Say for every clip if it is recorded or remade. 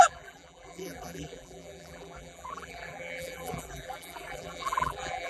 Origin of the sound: remade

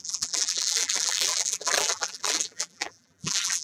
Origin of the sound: remade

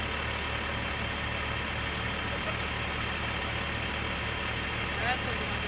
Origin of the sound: recorded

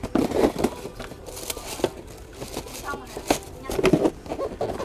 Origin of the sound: recorded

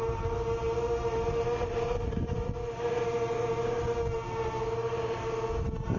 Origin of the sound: remade